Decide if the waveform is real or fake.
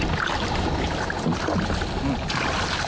real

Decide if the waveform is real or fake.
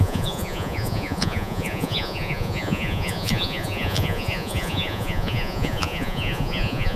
fake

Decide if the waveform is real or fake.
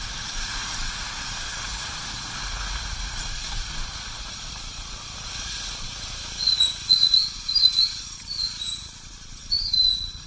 fake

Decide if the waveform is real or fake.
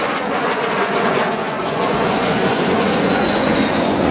fake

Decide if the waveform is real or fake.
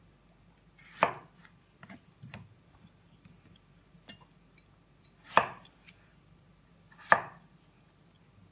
real